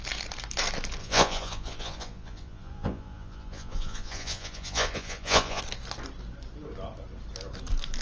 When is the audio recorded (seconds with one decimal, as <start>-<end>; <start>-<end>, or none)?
0.0-1.0; 5.6-8.0